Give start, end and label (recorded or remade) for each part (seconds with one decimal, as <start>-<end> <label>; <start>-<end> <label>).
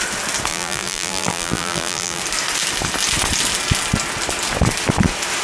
0.0-0.5 recorded; 0.5-2.2 remade; 2.2-5.4 recorded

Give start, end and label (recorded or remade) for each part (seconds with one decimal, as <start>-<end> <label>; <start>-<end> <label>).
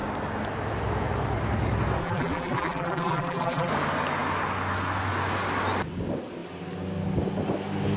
0.0-2.0 recorded; 2.0-3.7 remade; 3.7-8.0 recorded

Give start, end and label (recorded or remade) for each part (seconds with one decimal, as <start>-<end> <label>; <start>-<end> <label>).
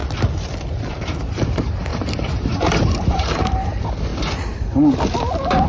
0.0-0.9 recorded; 0.9-4.1 remade; 4.1-5.7 recorded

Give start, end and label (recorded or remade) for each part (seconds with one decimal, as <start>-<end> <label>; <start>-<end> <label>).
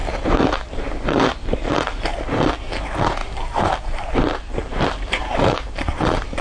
0.0-2.0 remade; 2.0-3.2 recorded; 3.2-6.4 remade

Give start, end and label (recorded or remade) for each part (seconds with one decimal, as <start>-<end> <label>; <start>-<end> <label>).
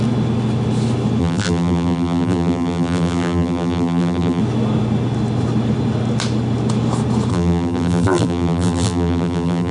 0.0-1.2 recorded; 1.2-4.4 remade; 4.4-7.3 recorded; 7.3-9.7 remade